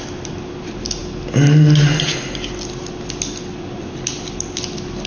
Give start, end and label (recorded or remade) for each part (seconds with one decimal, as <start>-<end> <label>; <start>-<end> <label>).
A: 0.0-5.1 recorded